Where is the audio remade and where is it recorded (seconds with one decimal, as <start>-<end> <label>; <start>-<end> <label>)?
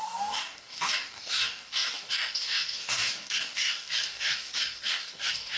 0.0-5.6 remade